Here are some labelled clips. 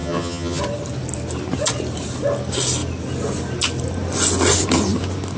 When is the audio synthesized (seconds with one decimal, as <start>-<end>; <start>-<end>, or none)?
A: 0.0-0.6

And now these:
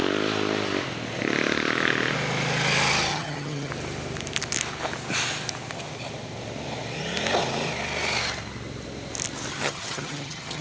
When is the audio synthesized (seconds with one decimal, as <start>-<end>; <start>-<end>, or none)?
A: 3.1-3.7; 9.5-10.6

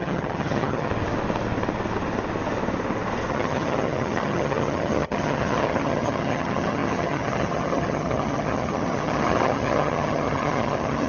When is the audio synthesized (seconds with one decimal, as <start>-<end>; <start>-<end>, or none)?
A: 0.0-0.9; 3.3-11.1